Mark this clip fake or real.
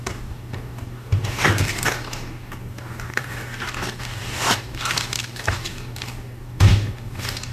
fake